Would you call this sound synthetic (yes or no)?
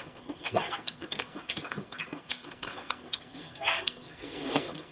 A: yes